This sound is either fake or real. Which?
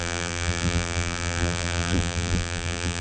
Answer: fake